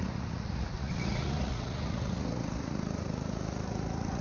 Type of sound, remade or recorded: remade